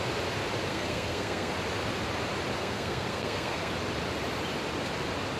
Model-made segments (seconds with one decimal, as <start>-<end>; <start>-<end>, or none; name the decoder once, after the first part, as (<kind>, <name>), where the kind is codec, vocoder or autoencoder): 0.7-1.5 (codec, SNAC); 2.6-3.7